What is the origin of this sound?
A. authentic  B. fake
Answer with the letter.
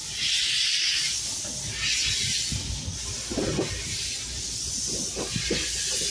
B